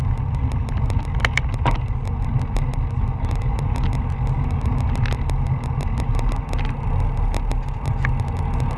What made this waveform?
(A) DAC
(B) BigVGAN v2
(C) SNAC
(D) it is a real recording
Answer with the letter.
D